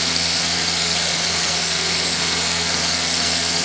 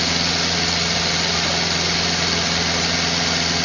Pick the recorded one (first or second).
second